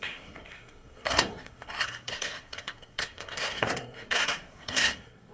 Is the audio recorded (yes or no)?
no